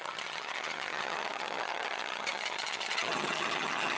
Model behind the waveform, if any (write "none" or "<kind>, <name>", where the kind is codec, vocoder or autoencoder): vocoder, HiFi-GAN